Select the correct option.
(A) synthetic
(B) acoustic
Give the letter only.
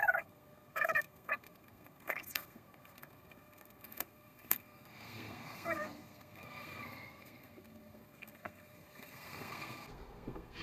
A